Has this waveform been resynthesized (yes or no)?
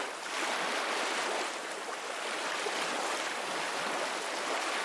no